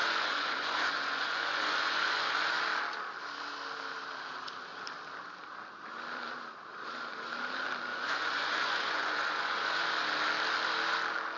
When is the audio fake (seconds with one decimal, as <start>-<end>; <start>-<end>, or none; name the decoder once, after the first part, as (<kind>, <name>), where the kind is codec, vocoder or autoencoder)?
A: 0.0-2.6 (vocoder, Vocos); 7.9-9.8